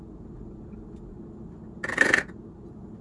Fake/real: real